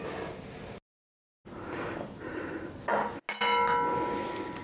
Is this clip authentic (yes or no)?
yes